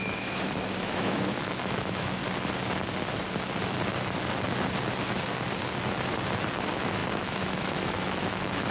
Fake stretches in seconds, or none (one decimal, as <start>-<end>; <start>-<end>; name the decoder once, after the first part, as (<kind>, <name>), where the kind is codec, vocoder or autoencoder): 0.0-2.2 (autoencoder, DAC-VAE); 6.6-8.7